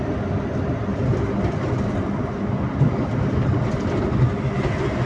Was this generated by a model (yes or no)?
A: no